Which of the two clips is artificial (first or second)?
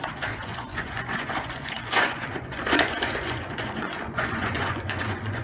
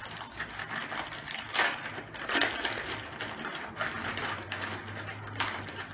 first